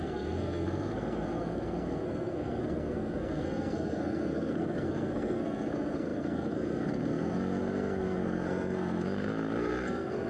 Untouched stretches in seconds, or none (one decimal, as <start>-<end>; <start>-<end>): none